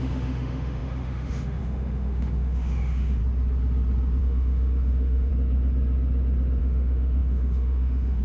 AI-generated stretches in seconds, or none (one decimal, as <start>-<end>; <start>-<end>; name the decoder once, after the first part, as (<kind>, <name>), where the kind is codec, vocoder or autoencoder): 0.0-3.2 (autoencoder, DAC-VAE); 4.2-5.3; 6.6-8.2